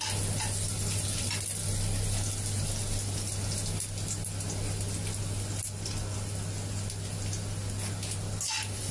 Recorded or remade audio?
recorded